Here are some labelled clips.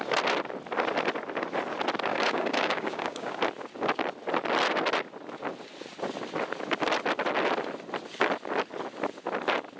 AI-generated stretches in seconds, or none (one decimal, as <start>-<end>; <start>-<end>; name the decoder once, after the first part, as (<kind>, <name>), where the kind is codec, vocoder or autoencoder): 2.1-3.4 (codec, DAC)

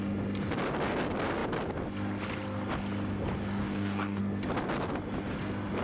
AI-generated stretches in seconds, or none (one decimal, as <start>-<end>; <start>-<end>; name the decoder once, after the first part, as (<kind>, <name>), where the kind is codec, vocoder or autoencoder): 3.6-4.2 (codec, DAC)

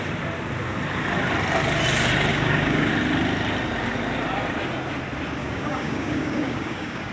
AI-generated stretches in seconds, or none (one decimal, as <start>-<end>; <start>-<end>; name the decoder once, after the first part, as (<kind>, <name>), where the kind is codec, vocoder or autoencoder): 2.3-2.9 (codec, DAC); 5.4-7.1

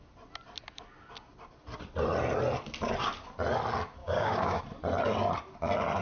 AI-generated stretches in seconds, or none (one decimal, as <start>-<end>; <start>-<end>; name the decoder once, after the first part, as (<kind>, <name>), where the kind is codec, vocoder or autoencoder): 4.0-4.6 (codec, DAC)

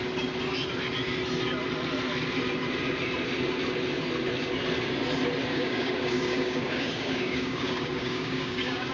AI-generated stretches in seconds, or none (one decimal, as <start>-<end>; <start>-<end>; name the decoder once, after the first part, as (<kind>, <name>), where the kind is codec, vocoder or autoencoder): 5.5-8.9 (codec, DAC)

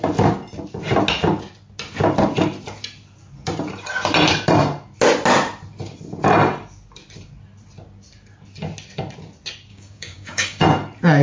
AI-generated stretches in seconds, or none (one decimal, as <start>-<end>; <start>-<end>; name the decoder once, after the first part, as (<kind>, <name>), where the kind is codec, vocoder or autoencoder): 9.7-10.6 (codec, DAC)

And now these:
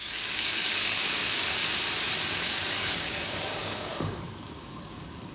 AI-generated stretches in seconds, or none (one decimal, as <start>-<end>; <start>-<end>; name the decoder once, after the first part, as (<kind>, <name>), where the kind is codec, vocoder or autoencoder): 0.0-1.6 (codec, DAC); 2.2-5.3

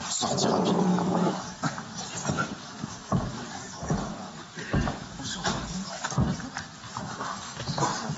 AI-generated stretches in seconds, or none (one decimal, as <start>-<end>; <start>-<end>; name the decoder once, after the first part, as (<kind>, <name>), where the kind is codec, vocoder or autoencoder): 0.9-2.0 (codec, DAC); 3.3-6.1